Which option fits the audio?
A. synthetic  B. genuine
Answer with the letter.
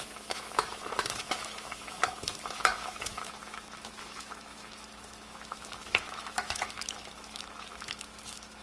A